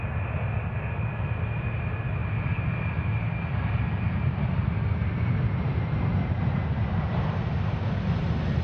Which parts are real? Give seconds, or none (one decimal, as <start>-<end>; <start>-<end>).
0.0-8.6